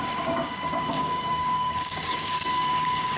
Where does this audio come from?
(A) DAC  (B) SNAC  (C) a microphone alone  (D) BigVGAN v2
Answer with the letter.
A